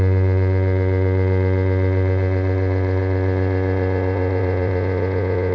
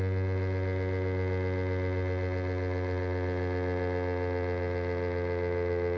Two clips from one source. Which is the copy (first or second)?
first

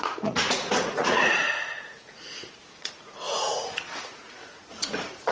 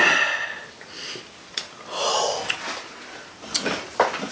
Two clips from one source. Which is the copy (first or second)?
first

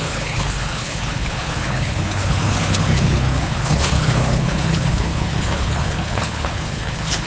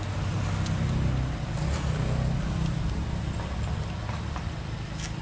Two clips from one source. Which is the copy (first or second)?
first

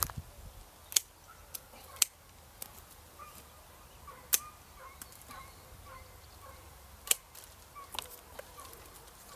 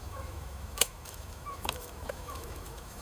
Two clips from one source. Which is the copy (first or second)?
second